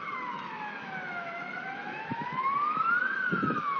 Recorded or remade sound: remade